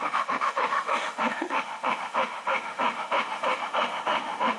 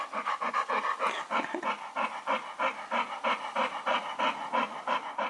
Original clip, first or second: second